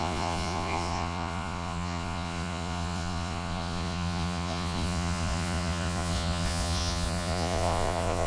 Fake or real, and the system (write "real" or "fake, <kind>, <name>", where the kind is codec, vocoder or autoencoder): fake, vocoder, Vocos